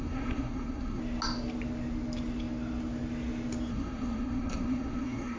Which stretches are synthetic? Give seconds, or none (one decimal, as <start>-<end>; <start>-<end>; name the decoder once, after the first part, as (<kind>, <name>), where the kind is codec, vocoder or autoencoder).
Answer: 0.0-1.0 (codec, SNAC); 3.7-5.4